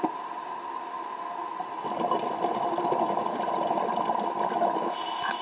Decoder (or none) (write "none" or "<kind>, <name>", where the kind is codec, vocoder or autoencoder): vocoder, BigVGAN v2